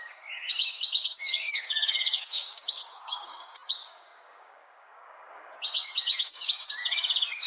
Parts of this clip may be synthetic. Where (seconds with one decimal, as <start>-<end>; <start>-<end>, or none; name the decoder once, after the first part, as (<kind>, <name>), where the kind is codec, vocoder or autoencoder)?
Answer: 0.0-7.5 (codec, DAC)